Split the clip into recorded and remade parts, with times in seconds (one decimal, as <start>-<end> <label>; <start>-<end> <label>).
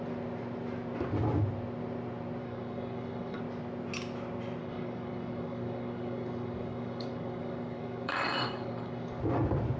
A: 0.0-2.4 recorded; 2.4-3.4 remade; 3.4-4.6 recorded; 4.6-9.2 remade; 9.2-9.8 recorded